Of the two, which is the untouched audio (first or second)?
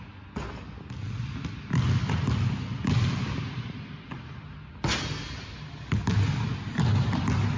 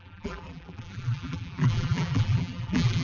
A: first